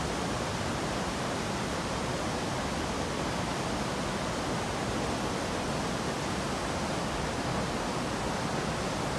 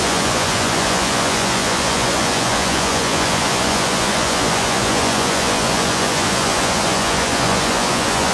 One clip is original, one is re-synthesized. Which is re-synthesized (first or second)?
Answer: second